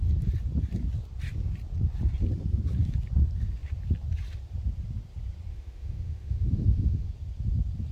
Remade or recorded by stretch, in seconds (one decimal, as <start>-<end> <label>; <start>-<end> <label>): 0.0-5.5 recorded; 5.5-7.1 remade; 7.1-7.9 recorded